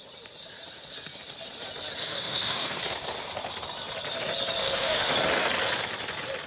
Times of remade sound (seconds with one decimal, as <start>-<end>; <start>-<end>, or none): 2.0-2.8; 4.6-5.1